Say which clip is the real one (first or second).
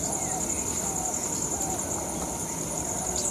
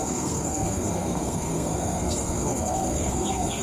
first